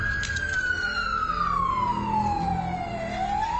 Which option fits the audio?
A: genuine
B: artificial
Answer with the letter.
A